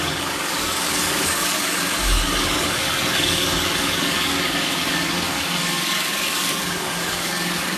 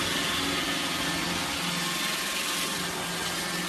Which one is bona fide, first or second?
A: second